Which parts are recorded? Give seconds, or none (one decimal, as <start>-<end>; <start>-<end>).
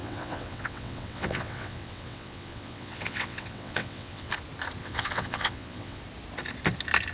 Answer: 4.3-4.8; 6.0-7.1